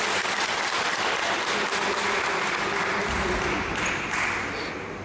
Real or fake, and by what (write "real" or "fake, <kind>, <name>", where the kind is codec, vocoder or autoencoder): real